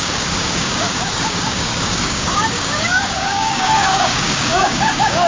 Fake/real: fake